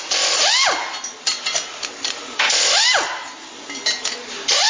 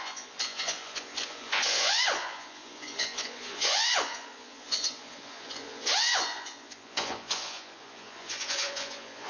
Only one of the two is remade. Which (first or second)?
second